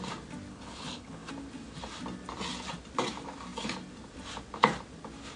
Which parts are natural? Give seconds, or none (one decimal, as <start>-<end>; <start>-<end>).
0.0-0.5; 1.3-5.4